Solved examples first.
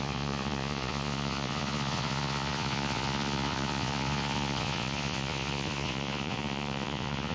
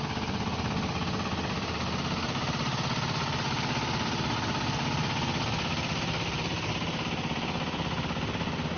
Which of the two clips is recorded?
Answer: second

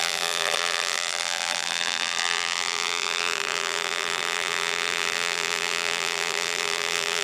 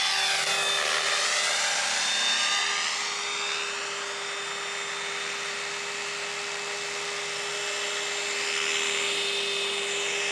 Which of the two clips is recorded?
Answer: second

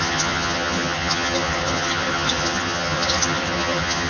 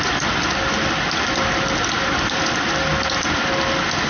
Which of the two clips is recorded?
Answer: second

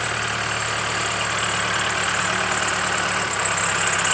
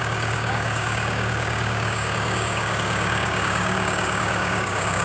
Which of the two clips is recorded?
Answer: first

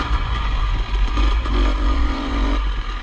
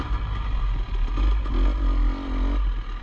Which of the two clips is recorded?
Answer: second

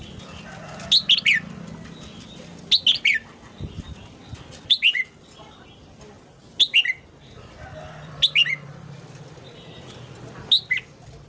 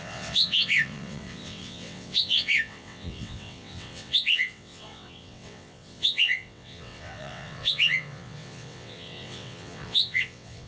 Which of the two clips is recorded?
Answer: first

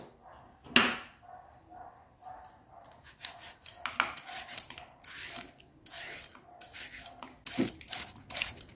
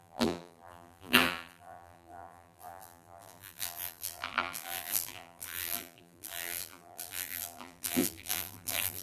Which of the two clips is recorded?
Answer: first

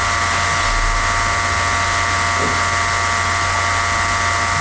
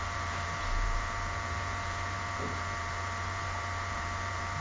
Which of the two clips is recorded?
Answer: first